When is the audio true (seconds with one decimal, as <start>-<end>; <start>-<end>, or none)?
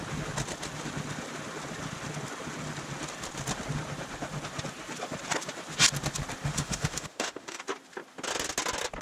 0.0-6.5; 7.6-9.0